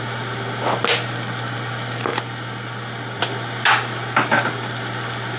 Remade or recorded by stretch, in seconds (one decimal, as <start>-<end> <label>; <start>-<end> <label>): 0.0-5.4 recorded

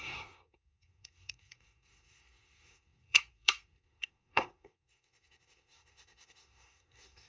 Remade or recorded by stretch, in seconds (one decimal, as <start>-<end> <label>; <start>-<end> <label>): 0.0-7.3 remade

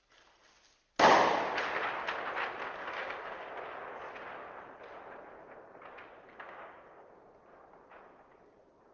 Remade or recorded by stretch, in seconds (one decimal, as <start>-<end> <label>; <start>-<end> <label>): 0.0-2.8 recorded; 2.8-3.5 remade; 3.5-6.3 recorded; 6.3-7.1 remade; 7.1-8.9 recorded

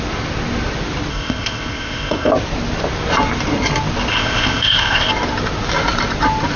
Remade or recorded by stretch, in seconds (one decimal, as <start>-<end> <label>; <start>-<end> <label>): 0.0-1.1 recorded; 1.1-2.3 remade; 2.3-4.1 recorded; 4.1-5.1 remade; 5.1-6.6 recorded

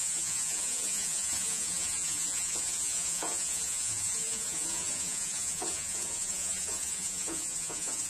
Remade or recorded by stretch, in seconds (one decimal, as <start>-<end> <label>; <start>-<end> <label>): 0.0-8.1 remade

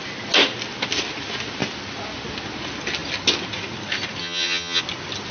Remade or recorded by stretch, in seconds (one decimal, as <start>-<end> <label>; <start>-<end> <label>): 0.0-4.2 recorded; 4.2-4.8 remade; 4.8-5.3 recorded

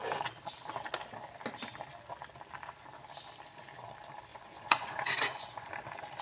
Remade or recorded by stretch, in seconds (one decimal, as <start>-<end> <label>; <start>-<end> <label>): 0.0-4.3 recorded; 4.3-5.7 remade; 5.7-6.2 recorded